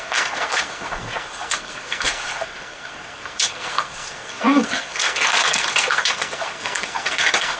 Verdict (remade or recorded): remade